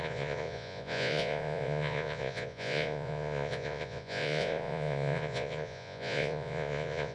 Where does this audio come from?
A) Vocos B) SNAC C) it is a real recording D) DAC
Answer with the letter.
A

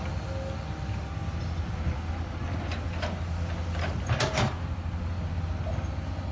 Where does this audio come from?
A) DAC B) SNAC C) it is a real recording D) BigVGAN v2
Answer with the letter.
C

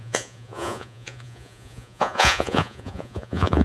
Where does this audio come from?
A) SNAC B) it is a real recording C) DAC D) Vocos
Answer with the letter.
D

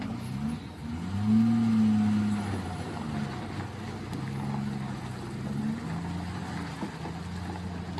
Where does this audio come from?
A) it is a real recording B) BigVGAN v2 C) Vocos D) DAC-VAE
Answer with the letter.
A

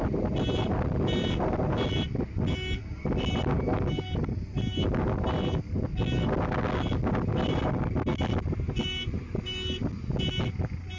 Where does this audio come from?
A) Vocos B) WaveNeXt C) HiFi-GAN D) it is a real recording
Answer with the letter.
D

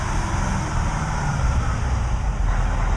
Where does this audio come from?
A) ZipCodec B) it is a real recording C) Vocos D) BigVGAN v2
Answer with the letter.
B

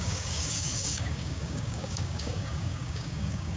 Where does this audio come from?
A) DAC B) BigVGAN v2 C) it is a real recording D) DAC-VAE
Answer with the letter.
A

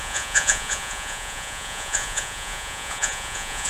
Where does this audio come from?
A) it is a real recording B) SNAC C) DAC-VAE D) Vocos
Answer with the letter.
D